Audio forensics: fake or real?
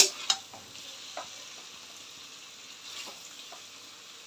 real